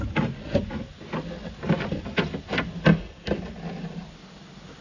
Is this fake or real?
real